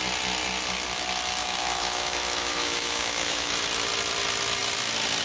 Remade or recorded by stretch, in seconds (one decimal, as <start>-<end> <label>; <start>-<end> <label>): 0.0-1.4 recorded; 1.4-3.5 remade; 3.5-5.2 recorded